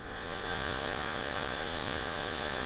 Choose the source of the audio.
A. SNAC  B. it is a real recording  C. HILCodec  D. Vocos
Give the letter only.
D